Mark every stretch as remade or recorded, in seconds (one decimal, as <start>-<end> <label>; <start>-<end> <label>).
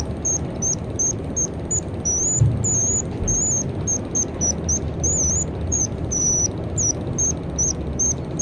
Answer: 0.0-5.7 recorded; 5.7-6.2 remade; 6.2-8.4 recorded